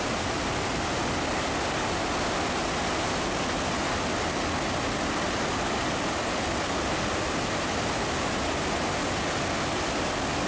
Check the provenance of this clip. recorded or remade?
recorded